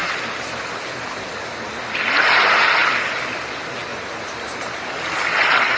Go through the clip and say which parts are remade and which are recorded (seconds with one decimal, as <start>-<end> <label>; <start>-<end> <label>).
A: 0.0-3.9 recorded; 3.9-5.0 remade; 5.0-5.8 recorded